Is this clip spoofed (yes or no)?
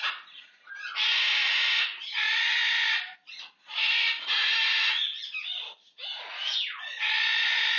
no